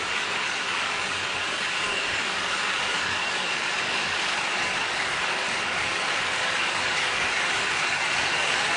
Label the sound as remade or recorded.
remade